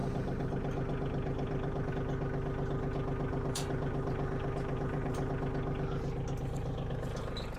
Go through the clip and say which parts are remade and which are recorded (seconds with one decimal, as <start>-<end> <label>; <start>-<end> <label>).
0.0-1.9 remade; 1.9-3.3 recorded; 3.3-5.3 remade; 5.3-7.6 recorded